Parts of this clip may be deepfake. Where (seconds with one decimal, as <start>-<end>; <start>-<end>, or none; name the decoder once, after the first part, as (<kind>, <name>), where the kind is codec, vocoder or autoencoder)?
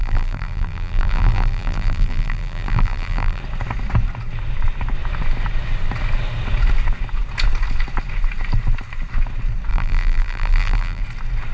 0.0-3.4 (vocoder, BigVGAN v2); 9.7-11.0